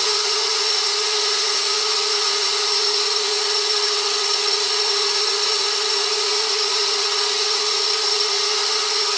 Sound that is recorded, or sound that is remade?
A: remade